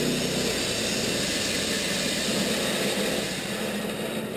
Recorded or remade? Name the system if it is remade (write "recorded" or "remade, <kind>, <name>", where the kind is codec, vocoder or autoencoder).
recorded